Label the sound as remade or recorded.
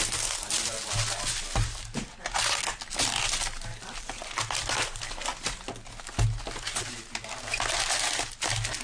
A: recorded